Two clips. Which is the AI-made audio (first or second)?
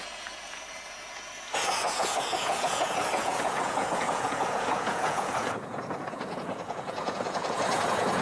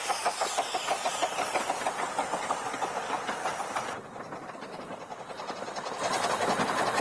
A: first